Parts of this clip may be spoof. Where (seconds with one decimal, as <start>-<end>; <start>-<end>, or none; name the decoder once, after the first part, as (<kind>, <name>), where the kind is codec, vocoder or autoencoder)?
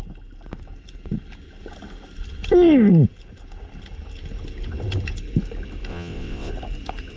5.9-6.5 (vocoder, WaveNeXt)